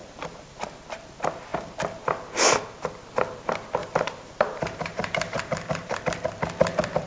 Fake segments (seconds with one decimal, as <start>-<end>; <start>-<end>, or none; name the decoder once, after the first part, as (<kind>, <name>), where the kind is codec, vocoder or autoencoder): 0.0-0.6 (vocoder, BigVGAN v2); 3.8-6.0